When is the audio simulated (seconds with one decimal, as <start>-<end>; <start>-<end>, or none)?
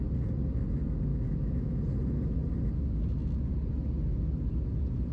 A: 1.1-1.8